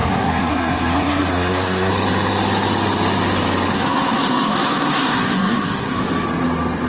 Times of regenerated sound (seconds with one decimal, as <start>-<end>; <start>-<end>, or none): 0.0-1.9; 3.7-6.0